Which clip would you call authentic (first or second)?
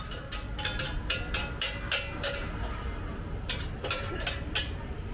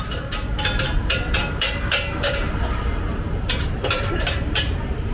first